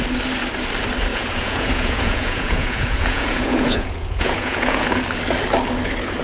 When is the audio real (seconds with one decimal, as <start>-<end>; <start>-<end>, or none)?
0.0-1.1; 4.8-6.2